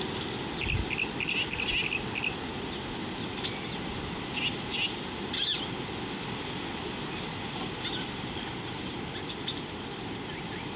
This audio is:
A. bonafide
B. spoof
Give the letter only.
A